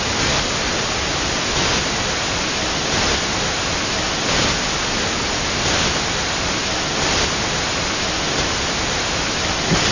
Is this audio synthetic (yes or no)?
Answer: no